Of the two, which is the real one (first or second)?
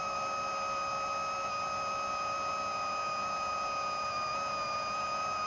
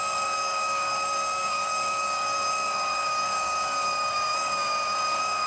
first